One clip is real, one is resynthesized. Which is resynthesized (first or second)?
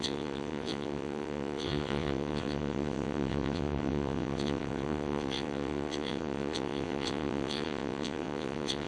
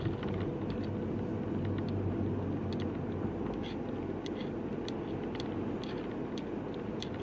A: first